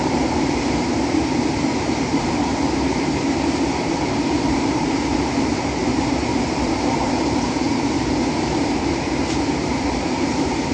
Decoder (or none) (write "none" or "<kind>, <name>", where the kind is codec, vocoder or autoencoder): vocoder, BigVGAN v2